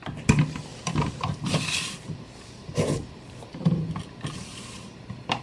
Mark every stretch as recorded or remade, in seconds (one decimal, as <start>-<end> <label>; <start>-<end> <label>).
0.0-0.7 recorded; 0.7-3.9 remade; 3.9-4.4 recorded; 4.4-5.0 remade; 5.0-5.4 recorded